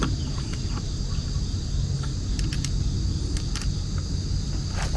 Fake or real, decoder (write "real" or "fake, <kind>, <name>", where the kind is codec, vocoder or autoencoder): real